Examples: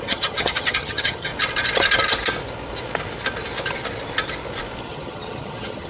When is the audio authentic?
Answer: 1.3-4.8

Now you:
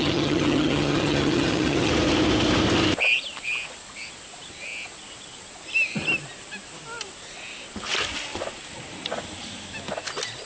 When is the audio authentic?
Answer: 1.9-10.5

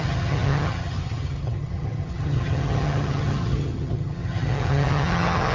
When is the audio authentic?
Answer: none

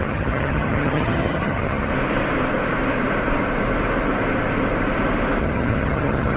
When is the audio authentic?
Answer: 1.9-5.4

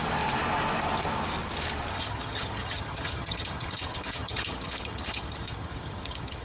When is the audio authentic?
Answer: 0.0-1.9

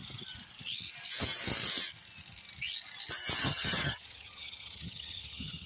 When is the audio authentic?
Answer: 0.0-3.4

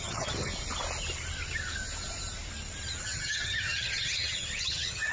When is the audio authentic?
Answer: 0.5-3.0